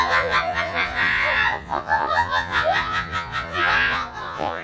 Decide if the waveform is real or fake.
fake